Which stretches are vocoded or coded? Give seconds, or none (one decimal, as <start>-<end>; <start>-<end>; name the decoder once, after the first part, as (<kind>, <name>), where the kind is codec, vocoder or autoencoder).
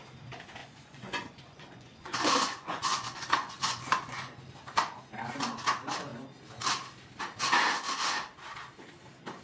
0.6-4.4 (vocoder, Vocos)